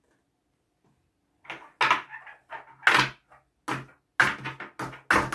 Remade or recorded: recorded